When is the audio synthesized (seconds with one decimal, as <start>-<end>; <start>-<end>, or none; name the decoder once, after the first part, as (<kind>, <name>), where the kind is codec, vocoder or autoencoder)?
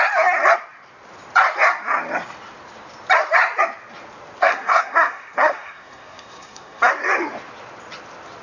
4.4-6.9 (codec, SNAC)